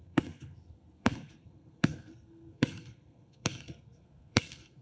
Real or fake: fake